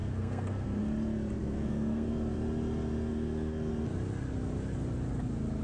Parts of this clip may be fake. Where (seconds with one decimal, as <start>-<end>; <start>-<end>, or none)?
0.0-0.8; 1.4-2.1; 3.1-3.7